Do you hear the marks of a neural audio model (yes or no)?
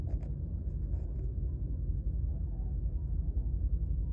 no